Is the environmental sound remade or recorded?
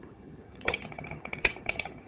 remade